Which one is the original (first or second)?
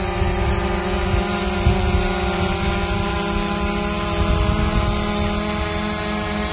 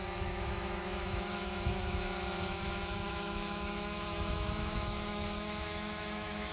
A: first